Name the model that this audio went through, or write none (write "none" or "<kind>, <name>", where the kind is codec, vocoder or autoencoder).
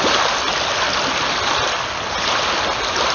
none